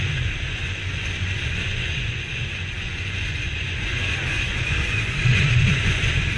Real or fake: fake